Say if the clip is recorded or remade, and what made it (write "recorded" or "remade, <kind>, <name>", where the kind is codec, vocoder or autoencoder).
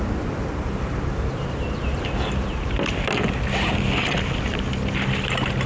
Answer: recorded